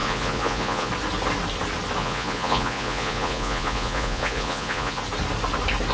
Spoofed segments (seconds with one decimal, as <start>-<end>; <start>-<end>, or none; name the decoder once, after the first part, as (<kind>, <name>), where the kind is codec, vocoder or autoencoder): 0.0-0.9 (vocoder, Vocos); 2.0-5.0